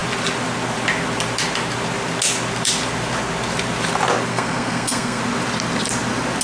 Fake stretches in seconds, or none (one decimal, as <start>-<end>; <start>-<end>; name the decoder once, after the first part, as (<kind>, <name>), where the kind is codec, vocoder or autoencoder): 4.3-5.2 (codec, SNAC)